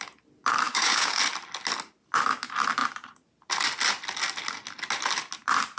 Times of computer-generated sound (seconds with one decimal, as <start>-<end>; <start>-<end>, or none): 0.7-1.2